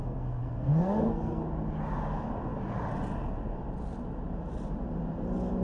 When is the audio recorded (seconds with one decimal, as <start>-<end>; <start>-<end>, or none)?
1.4-5.6